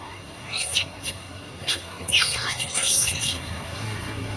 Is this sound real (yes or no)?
no